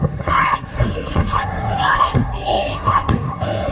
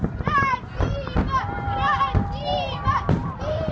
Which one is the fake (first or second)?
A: first